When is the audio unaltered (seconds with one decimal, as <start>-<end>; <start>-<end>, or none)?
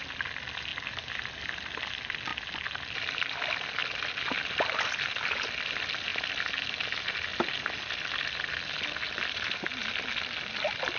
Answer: 0.0-11.0